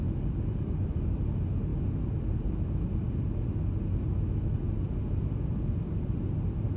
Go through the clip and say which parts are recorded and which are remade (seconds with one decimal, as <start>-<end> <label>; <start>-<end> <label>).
0.0-6.8 recorded